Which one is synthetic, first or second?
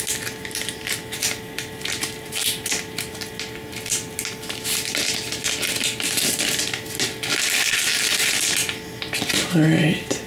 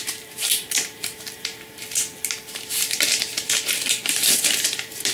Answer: second